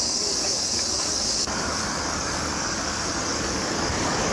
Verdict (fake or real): fake